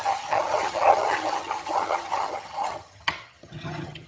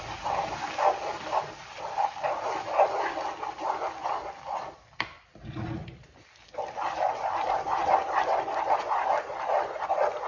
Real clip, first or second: second